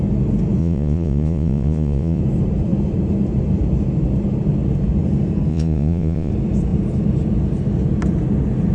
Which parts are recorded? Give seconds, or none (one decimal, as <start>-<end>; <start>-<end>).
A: 0.0-0.6; 2.2-5.5; 6.3-8.7